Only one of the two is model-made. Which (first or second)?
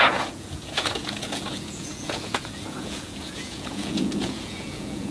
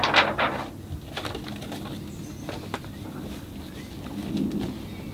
first